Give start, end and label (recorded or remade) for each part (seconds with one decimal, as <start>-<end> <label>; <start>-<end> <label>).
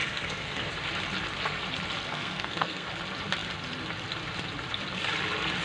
0.0-0.7 remade; 0.7-2.1 recorded; 2.1-2.9 remade; 2.9-5.6 recorded